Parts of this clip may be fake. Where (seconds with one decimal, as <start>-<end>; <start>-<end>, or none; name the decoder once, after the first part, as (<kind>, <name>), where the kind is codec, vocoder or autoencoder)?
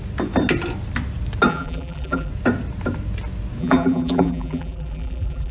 1.5-2.3 (vocoder, BigVGAN v2); 3.6-5.5